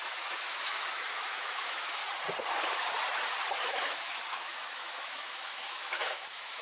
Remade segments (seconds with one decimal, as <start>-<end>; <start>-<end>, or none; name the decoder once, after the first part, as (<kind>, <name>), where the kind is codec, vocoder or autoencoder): 0.0-2.0 (autoencoder, DAC-VAE); 3.5-6.6